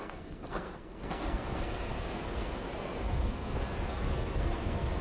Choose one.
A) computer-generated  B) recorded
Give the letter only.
A